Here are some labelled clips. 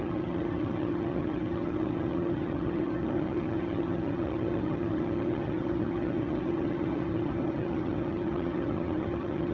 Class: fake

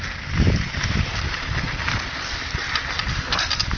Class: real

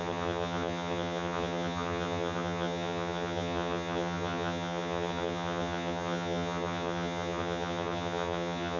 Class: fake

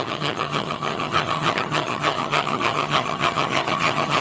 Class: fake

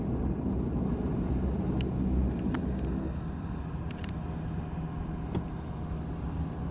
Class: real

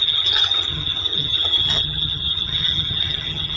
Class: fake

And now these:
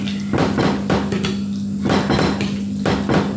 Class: real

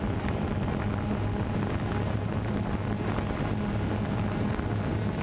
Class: real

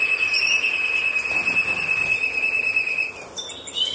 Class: real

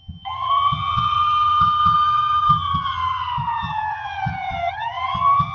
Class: fake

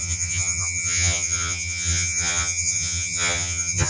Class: fake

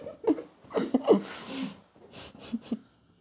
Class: real